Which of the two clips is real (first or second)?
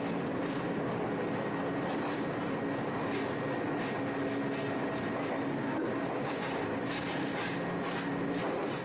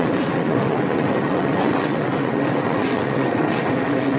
first